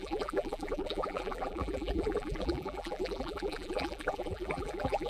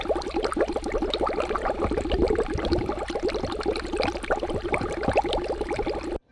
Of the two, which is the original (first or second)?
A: second